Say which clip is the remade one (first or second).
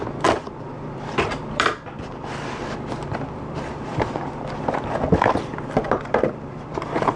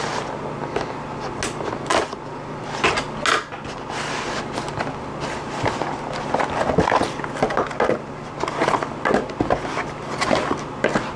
first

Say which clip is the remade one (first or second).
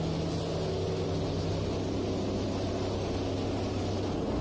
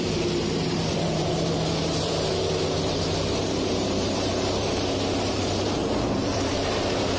second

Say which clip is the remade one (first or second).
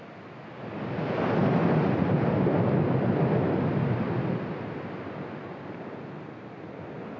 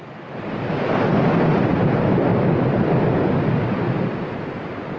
second